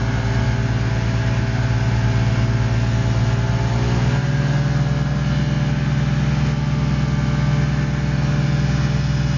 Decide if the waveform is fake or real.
real